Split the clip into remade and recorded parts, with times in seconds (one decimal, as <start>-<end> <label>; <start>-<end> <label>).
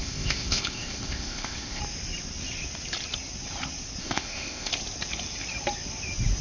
0.0-1.8 remade; 1.8-4.0 recorded; 4.0-4.7 remade; 4.7-6.4 recorded